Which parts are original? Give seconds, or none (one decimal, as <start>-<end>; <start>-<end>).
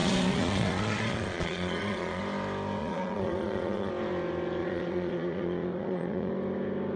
2.2-2.8; 3.9-4.6; 6.3-7.0